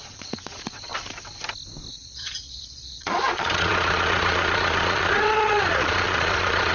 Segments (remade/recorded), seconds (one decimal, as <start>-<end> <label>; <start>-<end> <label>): 0.0-0.9 remade; 0.9-1.9 recorded; 1.9-6.7 remade